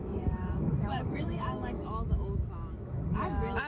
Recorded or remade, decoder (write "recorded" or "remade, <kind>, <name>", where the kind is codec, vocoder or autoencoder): remade, autoencoder, DAC-VAE